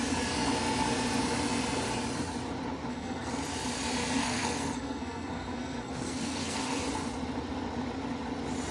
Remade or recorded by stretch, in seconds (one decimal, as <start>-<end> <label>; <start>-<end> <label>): 0.0-2.9 recorded; 2.9-3.4 remade; 3.4-4.2 recorded; 4.2-6.8 remade; 6.8-8.7 recorded